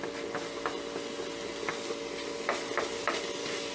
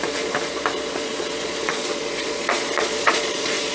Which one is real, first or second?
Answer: first